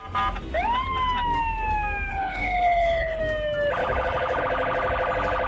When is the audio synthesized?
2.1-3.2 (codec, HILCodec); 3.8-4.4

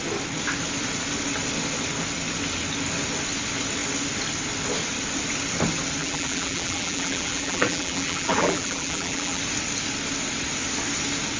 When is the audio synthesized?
6.0-9.4 (vocoder, BigVGAN v2)

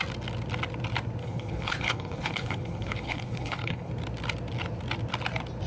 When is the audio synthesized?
1.2-3.9 (codec, HILCodec)

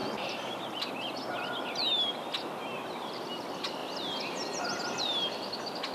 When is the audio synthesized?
0.0-0.9 (vocoder, BigVGAN v2)

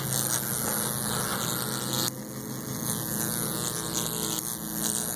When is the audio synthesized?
none

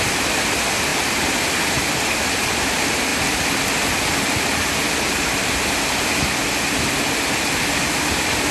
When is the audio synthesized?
0.0-3.1 (vocoder, BigVGAN v2); 7.8-8.5

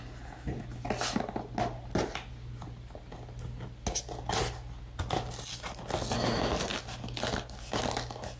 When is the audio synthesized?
none

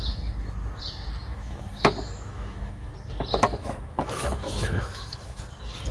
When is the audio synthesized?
1.2-2.9 (autoencoder, DAC-VAE); 3.5-5.4